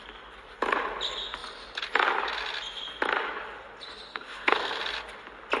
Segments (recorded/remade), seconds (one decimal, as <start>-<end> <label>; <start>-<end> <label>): 0.0-4.1 recorded; 4.1-4.8 remade; 4.8-5.6 recorded